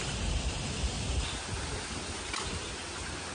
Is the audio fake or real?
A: real